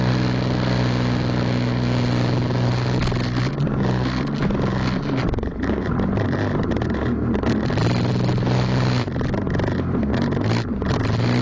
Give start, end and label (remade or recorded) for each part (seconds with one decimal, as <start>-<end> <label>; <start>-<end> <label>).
0.0-11.4 recorded